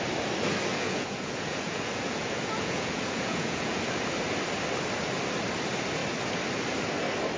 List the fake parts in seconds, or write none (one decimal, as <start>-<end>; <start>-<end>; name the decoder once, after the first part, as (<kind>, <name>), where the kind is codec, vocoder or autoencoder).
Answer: 0.7-3.9 (vocoder, Vocos)